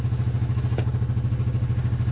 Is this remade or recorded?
recorded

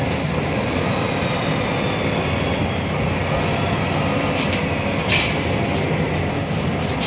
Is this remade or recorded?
recorded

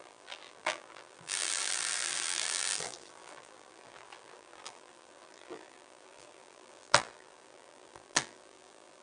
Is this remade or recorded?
remade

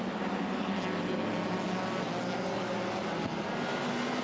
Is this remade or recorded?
recorded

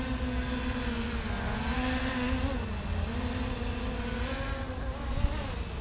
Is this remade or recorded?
recorded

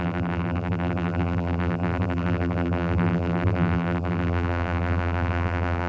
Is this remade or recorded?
remade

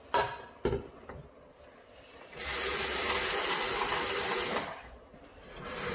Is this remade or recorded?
remade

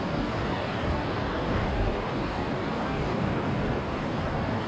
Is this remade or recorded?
remade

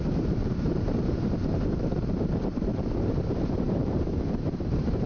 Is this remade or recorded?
remade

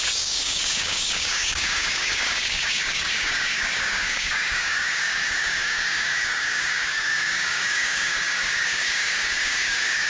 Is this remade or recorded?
remade